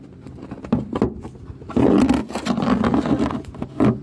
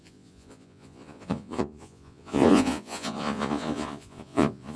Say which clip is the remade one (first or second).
second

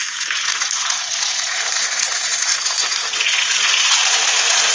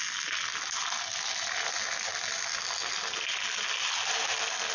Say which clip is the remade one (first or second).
first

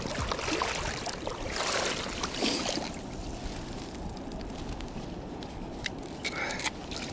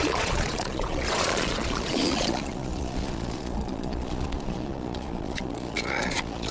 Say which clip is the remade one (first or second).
second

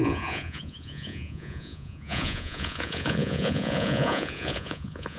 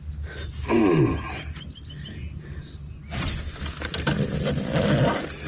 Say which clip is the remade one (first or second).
first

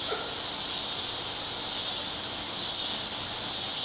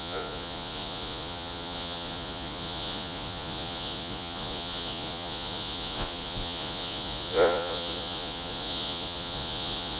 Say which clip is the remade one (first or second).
second